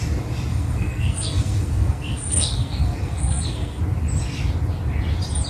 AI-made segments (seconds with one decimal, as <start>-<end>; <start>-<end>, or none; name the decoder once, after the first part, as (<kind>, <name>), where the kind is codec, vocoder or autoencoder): 0.5-3.8 (codec, SNAC)